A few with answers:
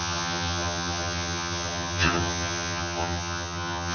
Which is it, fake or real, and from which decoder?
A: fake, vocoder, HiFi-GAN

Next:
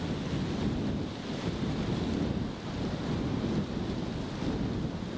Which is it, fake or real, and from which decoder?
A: real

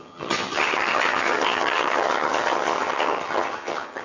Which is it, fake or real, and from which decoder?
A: fake, vocoder, HiFi-GAN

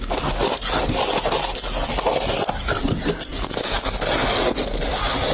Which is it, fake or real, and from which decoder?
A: real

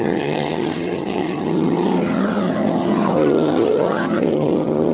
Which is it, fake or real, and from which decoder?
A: fake, vocoder, HiFi-GAN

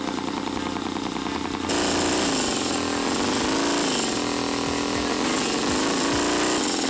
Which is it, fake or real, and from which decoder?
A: real